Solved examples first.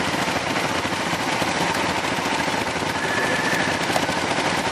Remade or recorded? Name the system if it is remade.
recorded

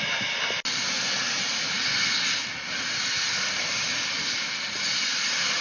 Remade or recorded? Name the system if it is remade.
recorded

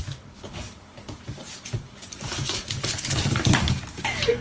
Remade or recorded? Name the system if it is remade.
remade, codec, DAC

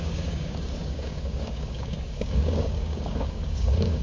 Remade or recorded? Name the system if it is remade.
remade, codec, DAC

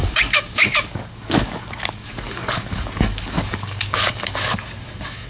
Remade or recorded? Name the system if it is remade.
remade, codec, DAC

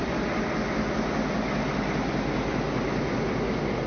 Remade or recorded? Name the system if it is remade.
recorded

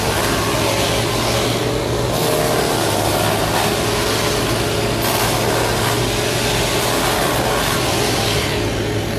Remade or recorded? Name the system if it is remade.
recorded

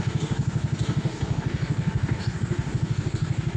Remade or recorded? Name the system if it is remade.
remade, codec, DAC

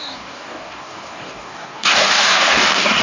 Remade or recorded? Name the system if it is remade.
remade, codec, DAC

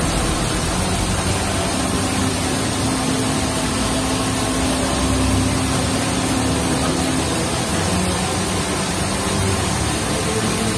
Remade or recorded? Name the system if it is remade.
recorded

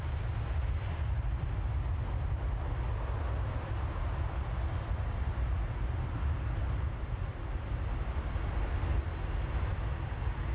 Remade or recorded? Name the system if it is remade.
recorded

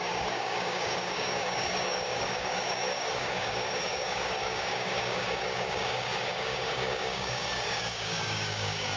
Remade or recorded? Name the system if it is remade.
remade, codec, DAC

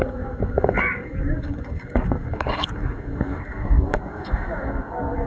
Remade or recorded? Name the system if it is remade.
remade, codec, DAC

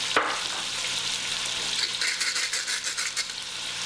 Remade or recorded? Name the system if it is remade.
recorded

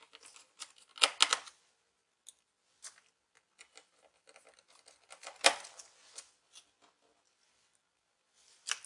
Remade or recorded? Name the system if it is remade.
recorded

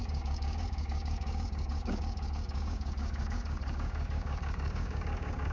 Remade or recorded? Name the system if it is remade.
remade, codec, DAC